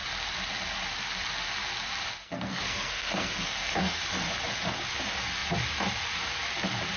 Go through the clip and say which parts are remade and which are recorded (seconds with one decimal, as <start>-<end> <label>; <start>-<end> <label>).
0.0-2.2 recorded; 2.2-4.0 remade; 4.0-7.0 recorded